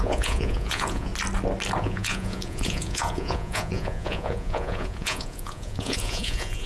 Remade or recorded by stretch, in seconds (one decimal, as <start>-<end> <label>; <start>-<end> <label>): 0.0-1.1 remade; 1.1-1.8 recorded; 1.8-6.7 remade